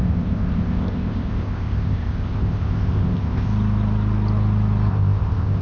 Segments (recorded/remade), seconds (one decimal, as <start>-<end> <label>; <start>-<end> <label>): 0.0-3.5 remade; 3.5-4.9 recorded; 4.9-5.6 remade